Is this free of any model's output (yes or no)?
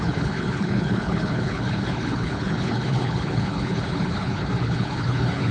no